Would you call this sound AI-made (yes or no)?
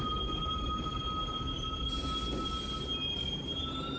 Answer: no